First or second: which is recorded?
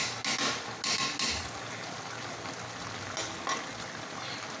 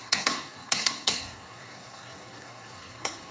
first